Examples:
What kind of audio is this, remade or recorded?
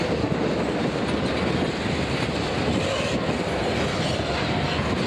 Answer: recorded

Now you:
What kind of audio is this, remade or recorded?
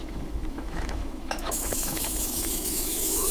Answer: remade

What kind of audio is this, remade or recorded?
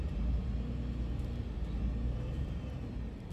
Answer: remade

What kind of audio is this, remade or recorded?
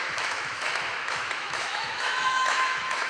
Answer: remade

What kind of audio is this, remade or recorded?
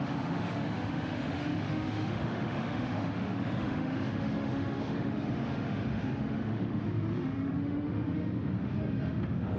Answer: remade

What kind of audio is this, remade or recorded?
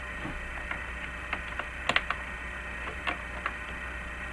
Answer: recorded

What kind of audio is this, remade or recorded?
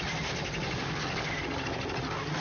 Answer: recorded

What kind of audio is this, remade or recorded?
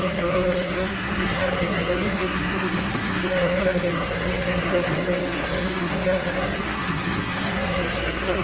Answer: remade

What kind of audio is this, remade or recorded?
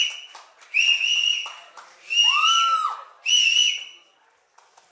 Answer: recorded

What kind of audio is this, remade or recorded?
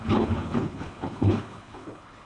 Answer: remade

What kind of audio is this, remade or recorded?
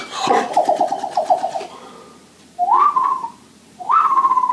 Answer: recorded